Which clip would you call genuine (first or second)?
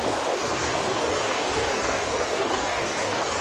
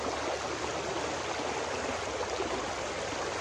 second